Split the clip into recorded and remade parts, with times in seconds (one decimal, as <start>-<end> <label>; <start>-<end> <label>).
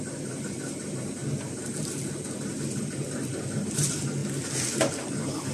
0.0-5.5 recorded